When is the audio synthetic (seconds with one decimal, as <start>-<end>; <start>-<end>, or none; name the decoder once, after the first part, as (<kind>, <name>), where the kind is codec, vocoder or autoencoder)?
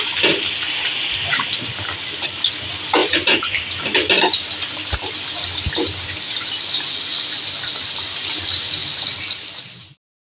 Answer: none